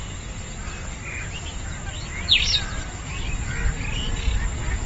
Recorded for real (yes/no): yes